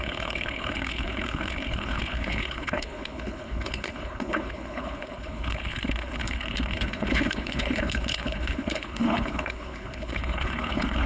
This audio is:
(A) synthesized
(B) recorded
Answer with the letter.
A